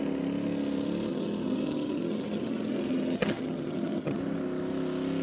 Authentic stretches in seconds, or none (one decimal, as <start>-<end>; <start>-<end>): 0.0-1.1; 4.2-5.2